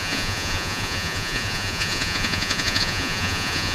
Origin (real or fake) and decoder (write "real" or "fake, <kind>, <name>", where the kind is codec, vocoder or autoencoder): fake, vocoder, Vocos